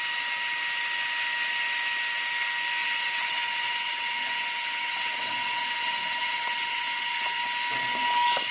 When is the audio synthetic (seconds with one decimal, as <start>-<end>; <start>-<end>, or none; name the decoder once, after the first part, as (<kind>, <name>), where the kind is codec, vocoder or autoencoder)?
2.8-7.4 (vocoder, WaveNeXt)